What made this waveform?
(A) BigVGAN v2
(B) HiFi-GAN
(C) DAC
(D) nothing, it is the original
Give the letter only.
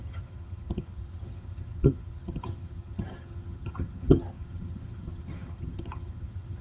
B